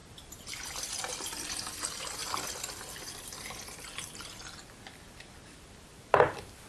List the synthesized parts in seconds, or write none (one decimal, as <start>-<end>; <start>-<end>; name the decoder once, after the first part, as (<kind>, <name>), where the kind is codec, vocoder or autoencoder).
none